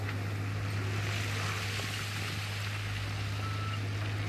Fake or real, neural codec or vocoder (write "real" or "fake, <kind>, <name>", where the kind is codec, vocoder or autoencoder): real